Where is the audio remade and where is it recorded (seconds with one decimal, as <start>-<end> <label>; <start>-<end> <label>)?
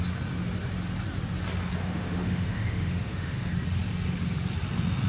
0.0-1.8 recorded; 1.8-3.5 remade; 3.5-5.1 recorded